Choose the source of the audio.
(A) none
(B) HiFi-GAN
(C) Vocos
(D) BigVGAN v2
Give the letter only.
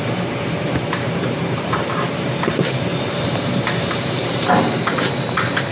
D